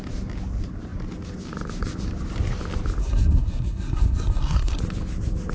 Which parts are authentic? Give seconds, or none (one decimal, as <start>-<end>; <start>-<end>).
0.0-3.0; 4.8-5.5